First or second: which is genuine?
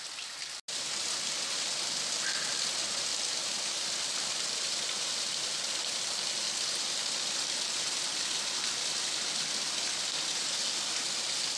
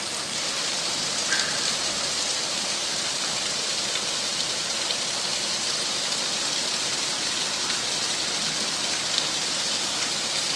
first